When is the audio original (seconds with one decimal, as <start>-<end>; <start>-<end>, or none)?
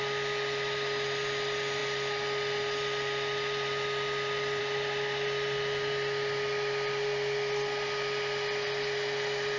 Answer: 0.0-9.6